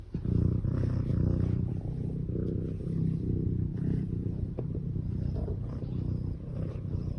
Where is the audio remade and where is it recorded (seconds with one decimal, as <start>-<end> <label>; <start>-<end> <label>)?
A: 0.0-3.7 recorded; 3.7-5.8 remade; 5.8-7.2 recorded